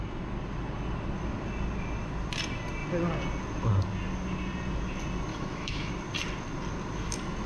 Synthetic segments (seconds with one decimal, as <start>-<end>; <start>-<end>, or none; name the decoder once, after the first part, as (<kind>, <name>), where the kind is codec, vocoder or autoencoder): 5.3-5.9 (autoencoder, DAC-VAE)

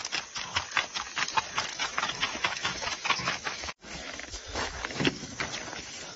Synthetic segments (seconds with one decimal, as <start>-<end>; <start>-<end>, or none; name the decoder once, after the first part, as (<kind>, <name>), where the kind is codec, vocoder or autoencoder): 1.7-5.4 (autoencoder, DAC-VAE)